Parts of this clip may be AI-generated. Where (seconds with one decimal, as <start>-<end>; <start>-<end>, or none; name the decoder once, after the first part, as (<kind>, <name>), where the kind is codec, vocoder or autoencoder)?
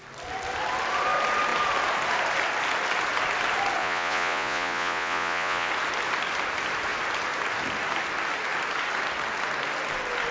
3.8-5.7 (vocoder, Vocos)